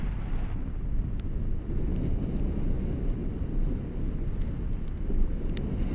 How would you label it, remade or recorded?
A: recorded